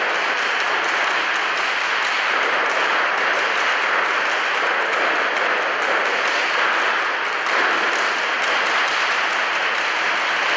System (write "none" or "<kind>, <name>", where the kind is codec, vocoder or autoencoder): none